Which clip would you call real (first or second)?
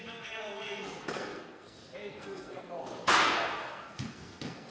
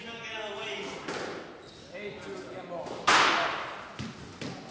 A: second